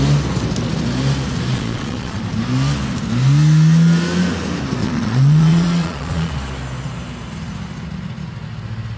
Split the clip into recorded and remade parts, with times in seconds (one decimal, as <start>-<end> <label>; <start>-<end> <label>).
0.0-1.5 recorded; 1.5-2.2 remade; 2.2-4.8 recorded; 4.8-6.3 remade; 6.3-9.0 recorded